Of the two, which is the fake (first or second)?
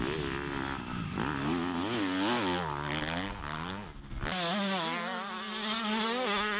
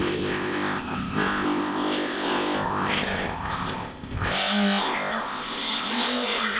second